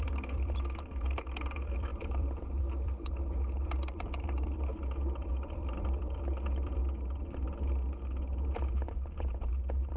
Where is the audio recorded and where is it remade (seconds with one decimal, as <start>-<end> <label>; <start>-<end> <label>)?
0.0-4.7 remade; 4.7-5.3 recorded; 5.3-6.8 remade; 6.8-9.5 recorded; 9.5-10.0 remade